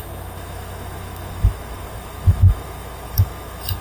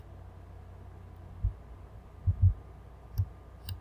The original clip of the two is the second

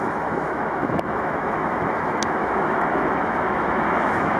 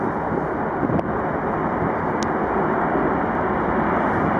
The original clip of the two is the second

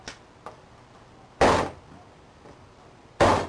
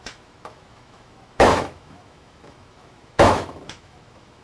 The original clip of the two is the first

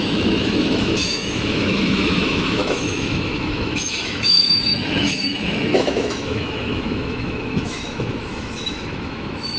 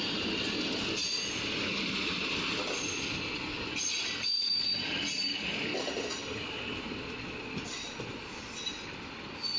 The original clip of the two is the second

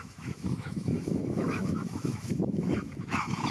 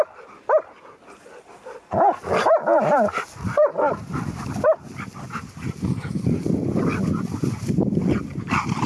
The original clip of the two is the second